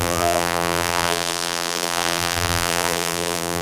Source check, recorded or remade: remade